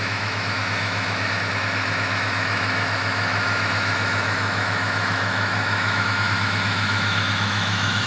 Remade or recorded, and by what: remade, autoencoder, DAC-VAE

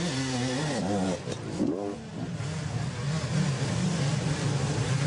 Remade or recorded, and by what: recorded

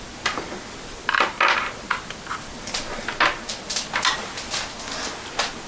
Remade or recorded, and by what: recorded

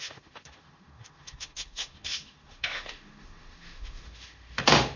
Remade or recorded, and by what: remade, autoencoder, DAC-VAE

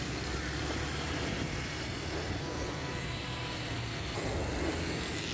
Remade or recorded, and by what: recorded